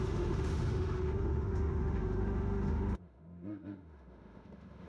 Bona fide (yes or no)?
no